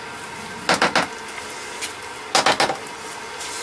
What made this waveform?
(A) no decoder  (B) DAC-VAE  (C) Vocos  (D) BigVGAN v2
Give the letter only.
A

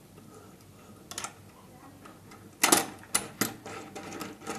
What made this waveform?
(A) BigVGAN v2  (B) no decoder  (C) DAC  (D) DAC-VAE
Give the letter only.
B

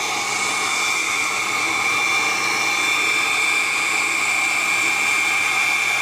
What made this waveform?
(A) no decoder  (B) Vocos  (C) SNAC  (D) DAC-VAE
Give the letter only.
A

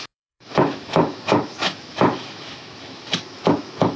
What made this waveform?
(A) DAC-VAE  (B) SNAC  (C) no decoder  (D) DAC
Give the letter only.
A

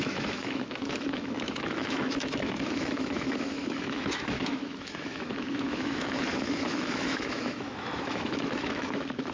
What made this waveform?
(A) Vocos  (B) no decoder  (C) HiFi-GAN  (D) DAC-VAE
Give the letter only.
D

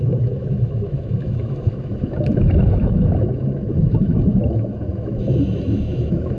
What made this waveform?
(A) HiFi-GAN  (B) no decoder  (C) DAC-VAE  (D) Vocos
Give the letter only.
C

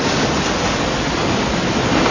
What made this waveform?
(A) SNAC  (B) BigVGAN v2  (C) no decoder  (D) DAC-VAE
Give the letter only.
C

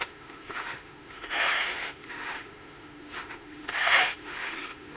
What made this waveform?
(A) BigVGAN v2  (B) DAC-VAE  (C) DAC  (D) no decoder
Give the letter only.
B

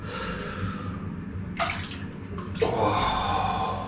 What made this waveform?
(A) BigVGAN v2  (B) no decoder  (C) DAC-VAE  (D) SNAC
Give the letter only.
B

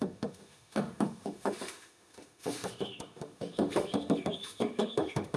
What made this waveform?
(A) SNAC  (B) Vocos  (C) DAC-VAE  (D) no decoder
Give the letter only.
C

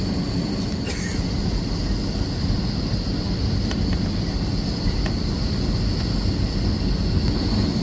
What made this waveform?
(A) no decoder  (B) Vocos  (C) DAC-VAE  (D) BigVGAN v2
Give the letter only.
A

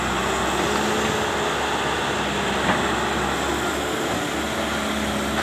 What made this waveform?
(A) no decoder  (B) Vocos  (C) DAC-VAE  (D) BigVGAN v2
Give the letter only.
A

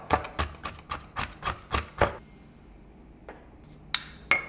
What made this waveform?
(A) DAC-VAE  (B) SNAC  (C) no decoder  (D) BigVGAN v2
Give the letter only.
C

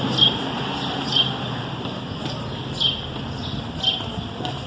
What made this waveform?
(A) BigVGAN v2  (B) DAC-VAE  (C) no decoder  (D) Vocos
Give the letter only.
C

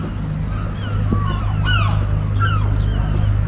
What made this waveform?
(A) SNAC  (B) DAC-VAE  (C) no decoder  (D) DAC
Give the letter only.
C